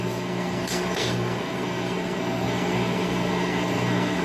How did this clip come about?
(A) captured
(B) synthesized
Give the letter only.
B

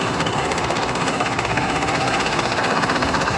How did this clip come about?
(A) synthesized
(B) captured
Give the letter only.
A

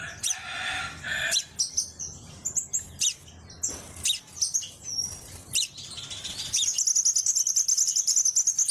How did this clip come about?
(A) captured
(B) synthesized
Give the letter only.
A